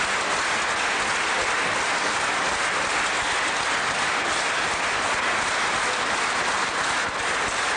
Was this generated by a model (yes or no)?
no